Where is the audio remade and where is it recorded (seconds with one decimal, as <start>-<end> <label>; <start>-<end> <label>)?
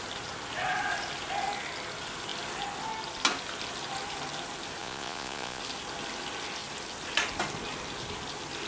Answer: 0.0-4.8 recorded; 4.8-5.6 remade; 5.6-8.7 recorded